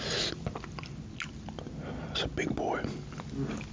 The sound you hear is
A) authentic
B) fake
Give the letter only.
A